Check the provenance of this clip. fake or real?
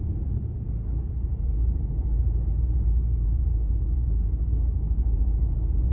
fake